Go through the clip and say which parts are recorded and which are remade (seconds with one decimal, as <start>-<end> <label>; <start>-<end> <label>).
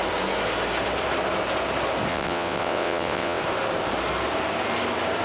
0.0-2.1 recorded; 2.1-3.4 remade; 3.4-5.2 recorded